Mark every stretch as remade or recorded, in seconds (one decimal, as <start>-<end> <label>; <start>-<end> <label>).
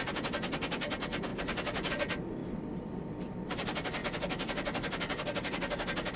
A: 0.0-6.2 recorded